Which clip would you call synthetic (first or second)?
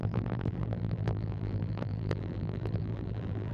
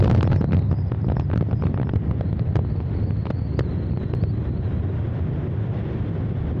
first